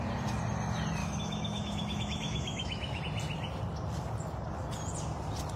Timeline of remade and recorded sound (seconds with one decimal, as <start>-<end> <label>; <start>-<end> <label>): 0.0-1.0 recorded; 1.0-3.0 remade; 3.0-5.6 recorded